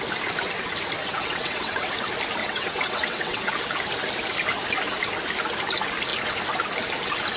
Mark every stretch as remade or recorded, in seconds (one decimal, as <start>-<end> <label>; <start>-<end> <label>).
0.0-1.0 recorded; 1.0-1.9 remade; 1.9-2.4 recorded; 2.4-3.5 remade; 3.5-7.4 recorded